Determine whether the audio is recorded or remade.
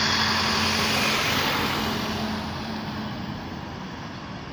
recorded